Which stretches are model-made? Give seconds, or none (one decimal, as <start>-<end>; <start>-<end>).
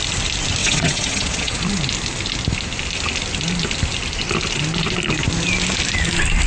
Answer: 0.6-1.6